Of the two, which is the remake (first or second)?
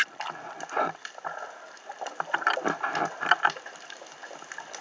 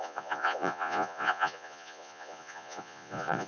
second